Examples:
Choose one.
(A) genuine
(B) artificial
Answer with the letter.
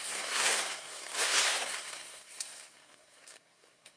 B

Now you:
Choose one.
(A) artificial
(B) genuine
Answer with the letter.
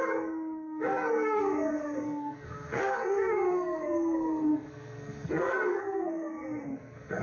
A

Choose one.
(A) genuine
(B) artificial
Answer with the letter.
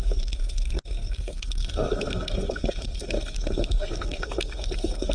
B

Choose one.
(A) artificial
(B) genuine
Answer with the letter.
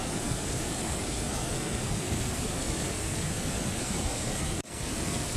A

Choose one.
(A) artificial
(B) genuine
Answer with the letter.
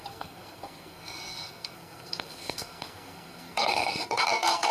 A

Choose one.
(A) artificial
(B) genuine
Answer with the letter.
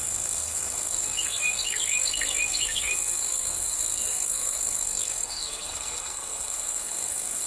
A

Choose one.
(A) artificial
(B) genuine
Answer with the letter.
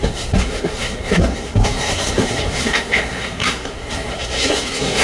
A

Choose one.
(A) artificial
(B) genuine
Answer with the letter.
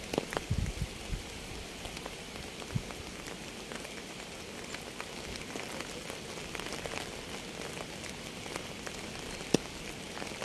B